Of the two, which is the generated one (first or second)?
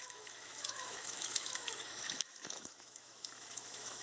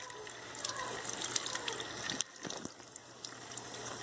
first